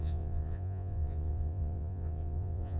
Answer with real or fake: fake